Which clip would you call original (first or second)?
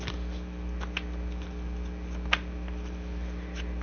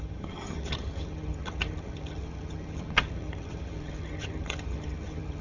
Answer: first